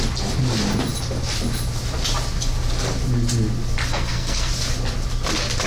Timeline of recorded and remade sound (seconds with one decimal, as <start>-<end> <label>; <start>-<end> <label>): 0.0-3.9 recorded; 3.9-4.5 remade; 4.5-5.7 recorded